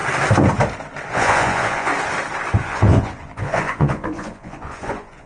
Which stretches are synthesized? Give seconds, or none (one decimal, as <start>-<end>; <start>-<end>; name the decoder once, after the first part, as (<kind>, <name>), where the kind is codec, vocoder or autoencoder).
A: 1.1-1.9 (vocoder, Vocos); 2.6-5.3